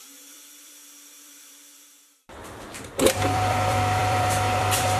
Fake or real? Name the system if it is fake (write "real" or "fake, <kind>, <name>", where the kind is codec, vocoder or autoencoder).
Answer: fake, vocoder, BigVGAN v2